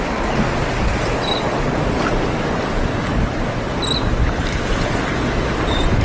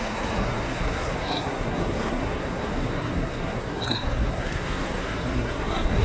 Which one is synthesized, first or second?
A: second